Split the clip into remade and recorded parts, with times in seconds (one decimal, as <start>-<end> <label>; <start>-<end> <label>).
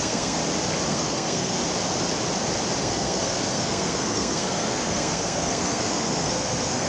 0.0-0.4 remade; 0.4-0.9 recorded; 0.9-1.6 remade; 1.6-2.8 recorded; 2.8-6.9 remade